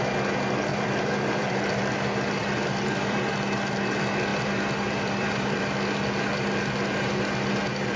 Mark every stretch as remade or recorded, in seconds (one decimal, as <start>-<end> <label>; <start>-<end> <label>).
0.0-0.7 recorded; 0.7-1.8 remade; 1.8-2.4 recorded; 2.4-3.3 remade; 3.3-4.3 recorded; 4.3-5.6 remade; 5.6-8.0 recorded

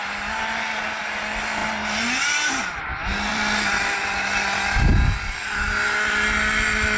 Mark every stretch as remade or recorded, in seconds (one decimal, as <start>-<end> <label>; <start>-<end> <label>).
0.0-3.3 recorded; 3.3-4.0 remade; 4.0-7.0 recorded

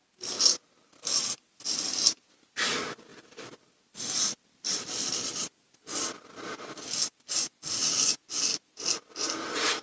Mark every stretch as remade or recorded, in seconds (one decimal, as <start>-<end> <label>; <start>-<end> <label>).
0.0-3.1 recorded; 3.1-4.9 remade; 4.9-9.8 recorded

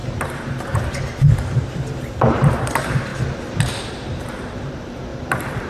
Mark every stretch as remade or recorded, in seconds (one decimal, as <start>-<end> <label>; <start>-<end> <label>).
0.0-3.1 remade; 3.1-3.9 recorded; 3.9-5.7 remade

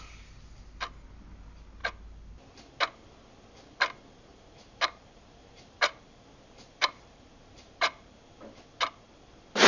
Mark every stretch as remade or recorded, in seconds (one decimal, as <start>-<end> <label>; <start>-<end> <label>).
0.0-4.3 recorded; 4.3-8.2 remade; 8.2-9.7 recorded

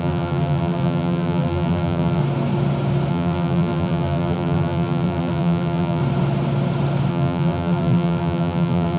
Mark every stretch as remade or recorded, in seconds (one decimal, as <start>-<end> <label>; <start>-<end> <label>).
0.0-2.2 remade; 2.2-3.1 recorded; 3.1-6.0 remade; 6.0-7.1 recorded; 7.1-9.0 remade

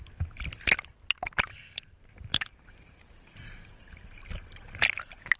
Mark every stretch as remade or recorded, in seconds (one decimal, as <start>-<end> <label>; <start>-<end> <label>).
0.0-2.3 recorded; 2.3-4.2 remade; 4.2-5.4 recorded

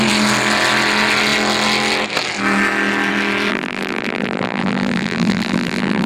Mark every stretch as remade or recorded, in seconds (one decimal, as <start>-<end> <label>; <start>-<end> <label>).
0.0-3.5 recorded; 3.5-6.1 remade